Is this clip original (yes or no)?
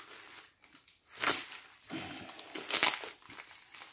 yes